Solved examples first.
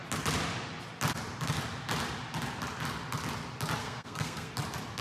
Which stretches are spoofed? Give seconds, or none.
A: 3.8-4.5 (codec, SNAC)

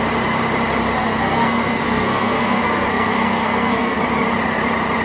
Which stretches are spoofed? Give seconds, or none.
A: 1.0-4.0 (codec, SNAC)

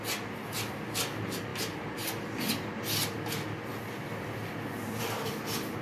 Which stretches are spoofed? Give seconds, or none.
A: none

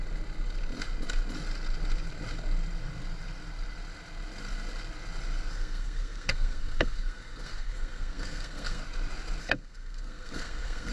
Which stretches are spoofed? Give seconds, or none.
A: 5.5-8.8 (codec, SNAC); 9.4-10.9

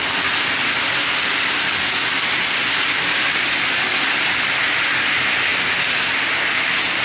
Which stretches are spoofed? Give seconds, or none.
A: none

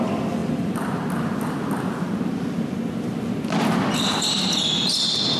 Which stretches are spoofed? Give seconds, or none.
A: none